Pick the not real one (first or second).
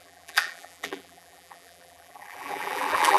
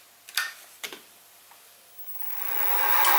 first